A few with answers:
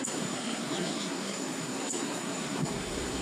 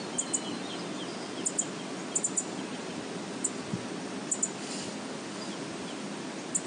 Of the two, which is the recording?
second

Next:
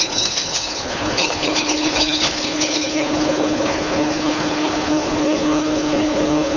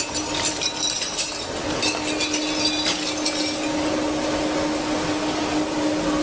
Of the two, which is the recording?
second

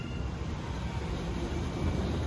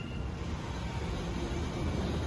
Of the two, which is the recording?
second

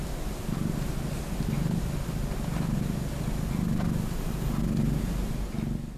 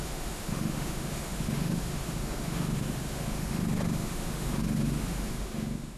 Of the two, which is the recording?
first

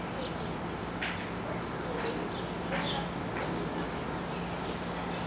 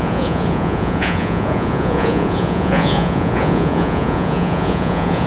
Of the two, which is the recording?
first